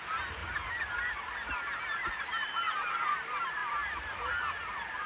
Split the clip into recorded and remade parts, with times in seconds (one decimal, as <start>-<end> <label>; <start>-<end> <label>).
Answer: 0.0-3.6 recorded; 3.6-4.3 remade; 4.3-5.1 recorded